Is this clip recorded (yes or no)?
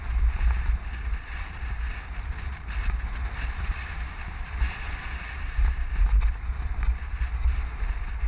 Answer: yes